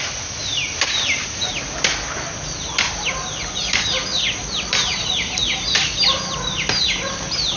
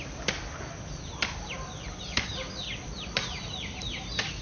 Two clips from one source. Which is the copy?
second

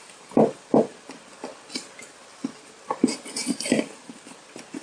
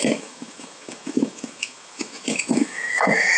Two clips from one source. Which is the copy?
second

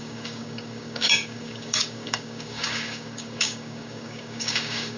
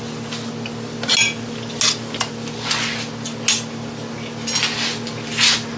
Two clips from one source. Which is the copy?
first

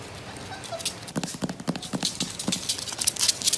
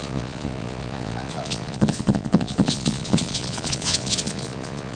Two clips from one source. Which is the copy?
second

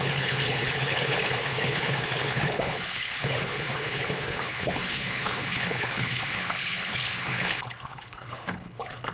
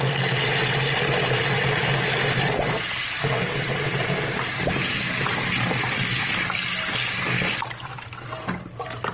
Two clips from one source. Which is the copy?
first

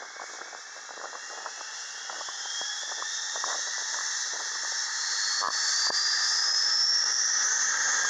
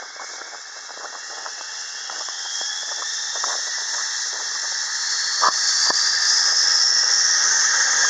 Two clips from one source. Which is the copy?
second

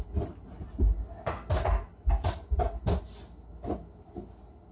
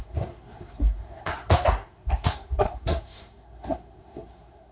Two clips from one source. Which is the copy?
second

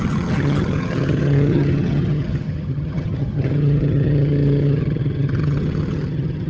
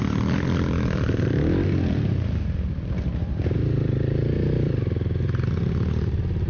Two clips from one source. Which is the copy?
first